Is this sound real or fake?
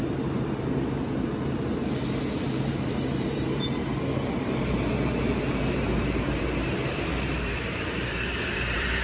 fake